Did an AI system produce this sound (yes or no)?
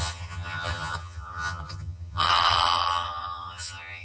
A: yes